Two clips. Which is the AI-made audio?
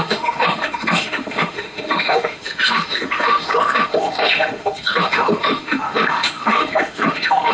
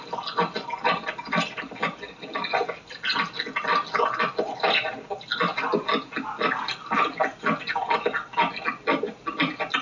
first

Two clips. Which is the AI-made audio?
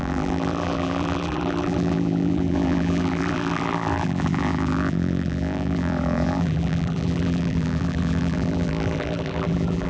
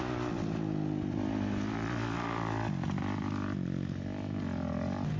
first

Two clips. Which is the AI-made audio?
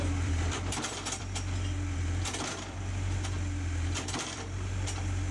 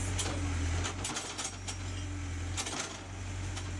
first